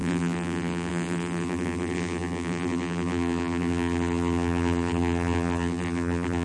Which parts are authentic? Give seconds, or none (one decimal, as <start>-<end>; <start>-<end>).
none